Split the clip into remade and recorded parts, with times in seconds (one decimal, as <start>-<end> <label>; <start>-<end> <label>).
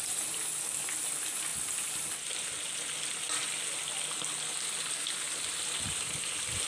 0.0-6.7 recorded